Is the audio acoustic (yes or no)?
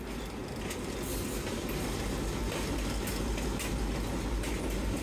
yes